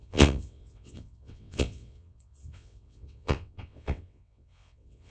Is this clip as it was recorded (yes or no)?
no